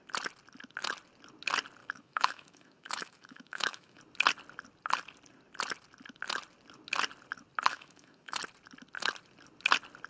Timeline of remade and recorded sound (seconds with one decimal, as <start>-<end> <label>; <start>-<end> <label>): 0.0-1.8 recorded; 1.8-4.0 remade; 4.0-7.7 recorded; 7.7-8.4 remade; 8.4-10.1 recorded